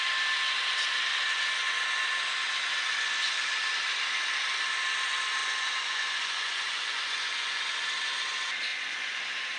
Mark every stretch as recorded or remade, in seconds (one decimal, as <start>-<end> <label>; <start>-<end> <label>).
0.0-5.4 recorded; 5.4-7.6 remade; 7.6-8.7 recorded; 8.7-9.2 remade; 9.2-9.6 recorded